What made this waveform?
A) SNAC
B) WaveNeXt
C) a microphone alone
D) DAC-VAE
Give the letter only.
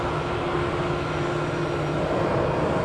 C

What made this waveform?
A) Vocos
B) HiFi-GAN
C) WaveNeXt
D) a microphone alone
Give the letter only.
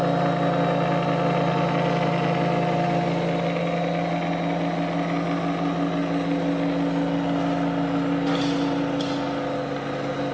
D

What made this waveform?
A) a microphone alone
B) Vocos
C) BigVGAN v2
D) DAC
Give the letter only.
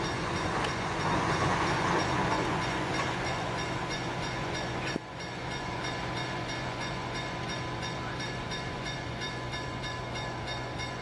B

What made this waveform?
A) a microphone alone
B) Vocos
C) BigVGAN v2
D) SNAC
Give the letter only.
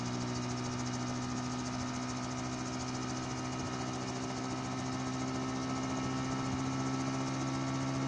A